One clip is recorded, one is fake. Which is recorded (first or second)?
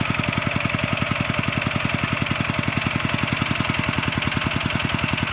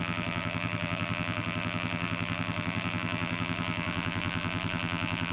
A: first